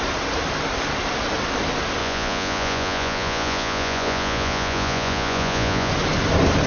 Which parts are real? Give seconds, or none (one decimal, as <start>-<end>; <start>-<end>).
0.0-2.0; 5.9-6.7